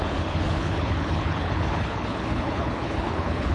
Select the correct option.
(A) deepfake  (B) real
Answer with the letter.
A